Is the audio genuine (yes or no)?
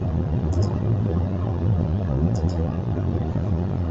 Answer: no